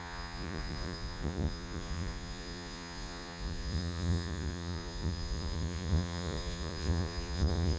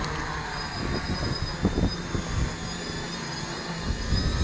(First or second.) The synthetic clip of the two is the first